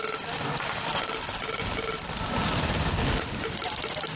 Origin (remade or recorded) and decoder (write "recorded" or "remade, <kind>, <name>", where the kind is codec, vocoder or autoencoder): recorded